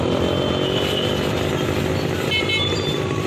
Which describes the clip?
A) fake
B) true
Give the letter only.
B